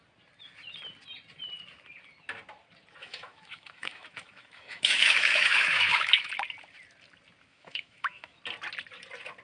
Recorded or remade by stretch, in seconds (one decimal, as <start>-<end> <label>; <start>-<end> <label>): 0.0-3.0 recorded; 3.0-6.3 remade; 6.3-7.5 recorded; 7.5-8.4 remade; 8.4-9.4 recorded